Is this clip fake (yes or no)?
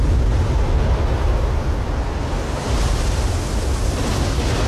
no